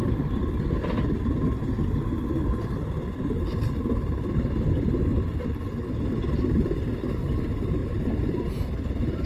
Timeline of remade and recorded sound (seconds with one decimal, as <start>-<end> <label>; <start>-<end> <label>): 0.0-7.8 recorded; 7.8-9.3 remade